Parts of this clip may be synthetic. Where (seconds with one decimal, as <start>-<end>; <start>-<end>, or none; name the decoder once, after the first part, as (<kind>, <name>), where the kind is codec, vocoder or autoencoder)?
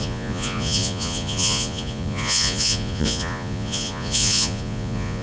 0.0-5.2 (vocoder, Vocos)